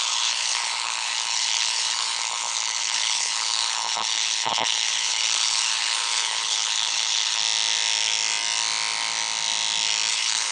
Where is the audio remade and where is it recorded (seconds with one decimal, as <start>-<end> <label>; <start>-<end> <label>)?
0.0-7.4 remade; 7.4-10.1 recorded; 10.1-10.5 remade